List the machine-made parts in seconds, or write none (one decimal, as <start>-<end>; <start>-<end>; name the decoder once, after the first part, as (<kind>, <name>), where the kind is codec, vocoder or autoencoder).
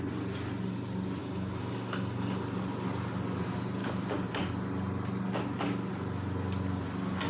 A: 1.2-2.4 (codec, DAC)